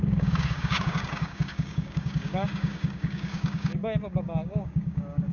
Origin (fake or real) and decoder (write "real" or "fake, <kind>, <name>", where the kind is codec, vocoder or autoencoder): fake, codec, DAC